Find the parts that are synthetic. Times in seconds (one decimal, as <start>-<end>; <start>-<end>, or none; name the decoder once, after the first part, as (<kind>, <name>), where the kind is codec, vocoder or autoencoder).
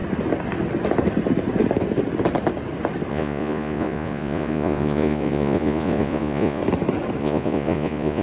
3.1-6.6 (vocoder, Vocos); 7.2-8.2